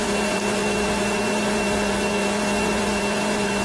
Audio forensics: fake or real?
fake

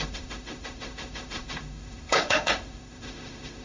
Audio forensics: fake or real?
fake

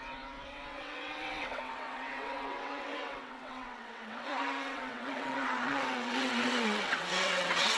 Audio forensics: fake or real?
fake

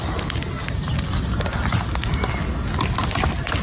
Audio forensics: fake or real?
real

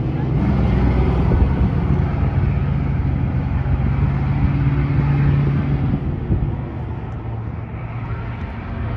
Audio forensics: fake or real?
real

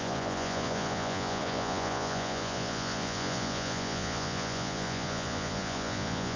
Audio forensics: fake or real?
fake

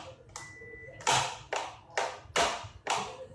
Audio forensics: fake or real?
real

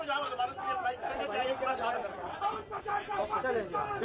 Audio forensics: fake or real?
real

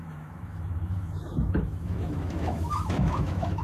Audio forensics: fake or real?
fake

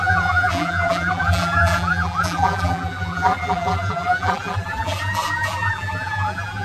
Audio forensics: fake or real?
fake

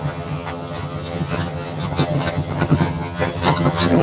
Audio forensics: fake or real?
fake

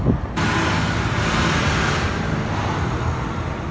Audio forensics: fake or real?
real